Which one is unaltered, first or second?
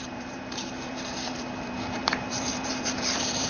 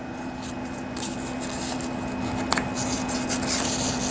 second